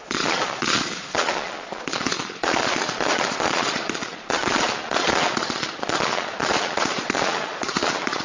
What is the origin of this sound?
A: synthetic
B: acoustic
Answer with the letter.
A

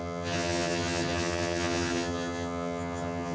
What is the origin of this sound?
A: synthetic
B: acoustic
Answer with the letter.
A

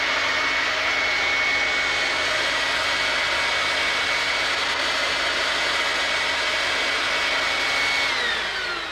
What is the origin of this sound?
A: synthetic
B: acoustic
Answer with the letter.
B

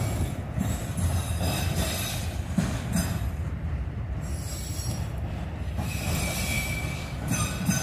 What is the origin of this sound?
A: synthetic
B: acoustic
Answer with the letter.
B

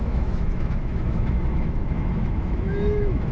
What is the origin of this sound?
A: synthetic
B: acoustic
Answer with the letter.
A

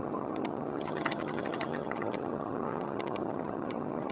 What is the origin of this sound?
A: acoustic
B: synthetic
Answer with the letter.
B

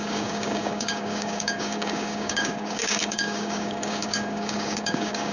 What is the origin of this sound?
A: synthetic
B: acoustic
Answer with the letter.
A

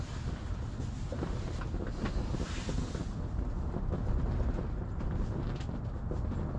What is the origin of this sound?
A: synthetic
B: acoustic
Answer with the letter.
B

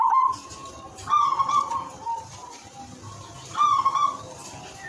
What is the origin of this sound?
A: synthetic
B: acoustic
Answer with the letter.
B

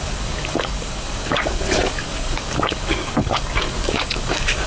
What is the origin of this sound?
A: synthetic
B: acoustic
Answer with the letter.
A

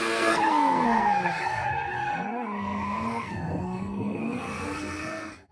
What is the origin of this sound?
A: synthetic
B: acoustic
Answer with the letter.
A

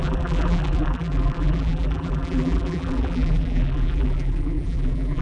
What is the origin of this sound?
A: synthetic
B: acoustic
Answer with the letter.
A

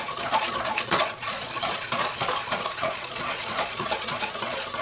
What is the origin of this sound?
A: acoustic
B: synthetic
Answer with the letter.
B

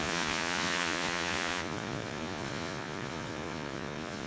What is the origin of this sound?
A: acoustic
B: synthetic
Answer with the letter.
B